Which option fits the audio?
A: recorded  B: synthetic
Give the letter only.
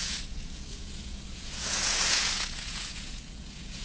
B